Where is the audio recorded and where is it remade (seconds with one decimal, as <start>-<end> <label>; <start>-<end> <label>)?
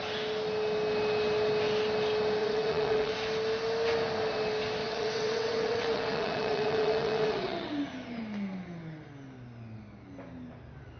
0.0-2.4 recorded; 2.4-3.1 remade; 3.1-4.8 recorded; 4.8-7.7 remade; 7.7-11.0 recorded